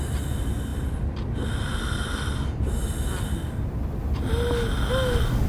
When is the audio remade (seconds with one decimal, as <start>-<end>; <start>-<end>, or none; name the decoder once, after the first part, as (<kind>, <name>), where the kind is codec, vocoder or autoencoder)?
none